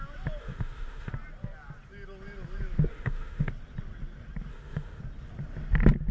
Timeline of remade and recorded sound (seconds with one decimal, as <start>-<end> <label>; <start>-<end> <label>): 0.0-0.4 recorded; 0.4-1.1 remade; 1.1-2.9 recorded; 2.9-3.5 remade; 3.5-4.5 recorded; 4.5-5.0 remade; 5.0-6.1 recorded